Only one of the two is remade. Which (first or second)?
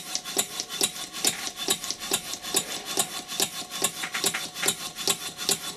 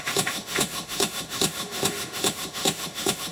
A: second